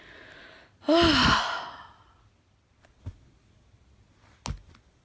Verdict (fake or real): real